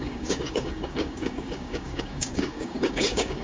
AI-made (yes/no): yes